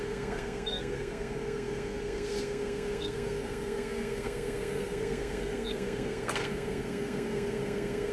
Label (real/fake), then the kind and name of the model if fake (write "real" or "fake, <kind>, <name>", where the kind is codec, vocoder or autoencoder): fake, codec, SNAC